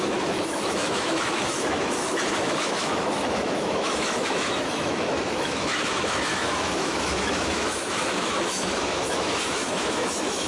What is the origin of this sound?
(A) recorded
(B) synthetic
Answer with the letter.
B